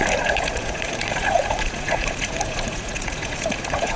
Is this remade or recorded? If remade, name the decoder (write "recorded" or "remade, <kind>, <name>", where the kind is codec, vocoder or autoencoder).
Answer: remade, vocoder, Vocos